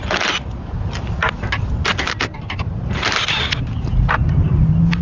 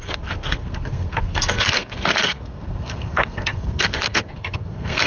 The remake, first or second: second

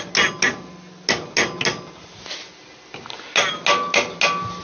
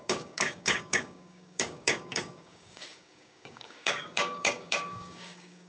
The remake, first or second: second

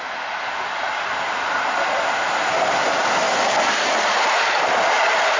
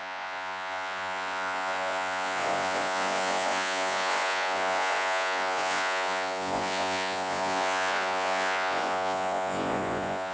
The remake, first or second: second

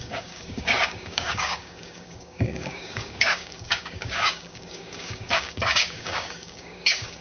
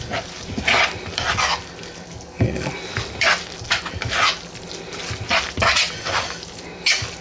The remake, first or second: first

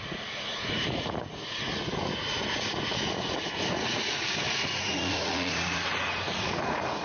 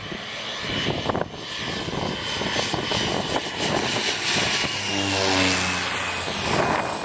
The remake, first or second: first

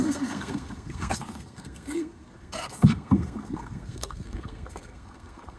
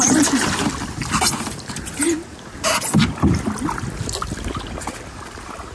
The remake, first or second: first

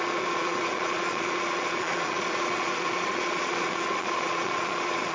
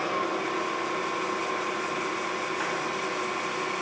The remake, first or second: first